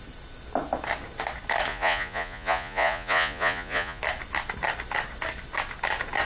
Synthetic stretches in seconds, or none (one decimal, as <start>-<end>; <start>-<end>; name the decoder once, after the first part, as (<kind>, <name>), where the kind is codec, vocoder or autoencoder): 1.7-4.0 (vocoder, Vocos)